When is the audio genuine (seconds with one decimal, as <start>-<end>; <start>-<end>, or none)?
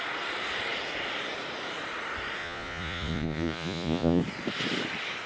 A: 0.0-2.4; 4.2-5.3